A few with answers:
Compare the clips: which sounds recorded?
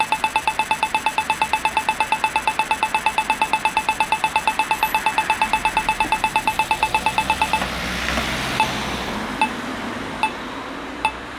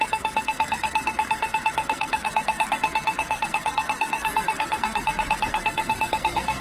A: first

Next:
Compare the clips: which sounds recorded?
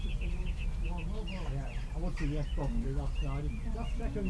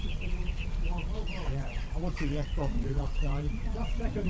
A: first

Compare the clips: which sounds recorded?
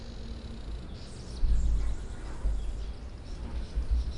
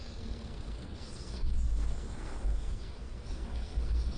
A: first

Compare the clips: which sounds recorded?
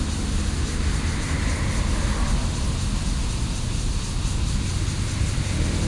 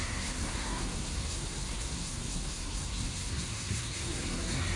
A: first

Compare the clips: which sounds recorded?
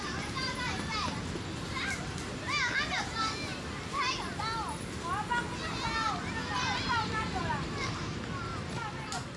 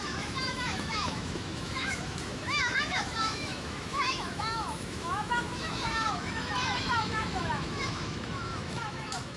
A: first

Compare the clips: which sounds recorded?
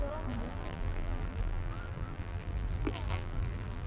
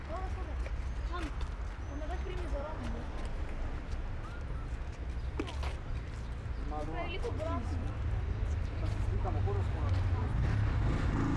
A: second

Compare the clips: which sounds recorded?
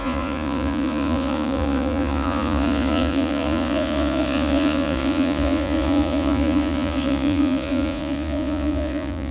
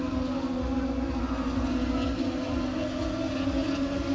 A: second